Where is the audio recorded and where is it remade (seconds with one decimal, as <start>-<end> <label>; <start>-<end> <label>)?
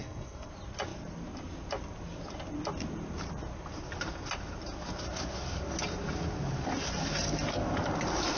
0.0-0.5 remade; 0.5-8.4 recorded